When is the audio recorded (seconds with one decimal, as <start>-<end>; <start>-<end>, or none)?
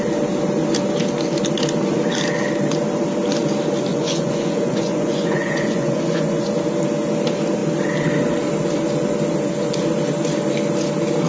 0.0-3.9; 6.5-11.3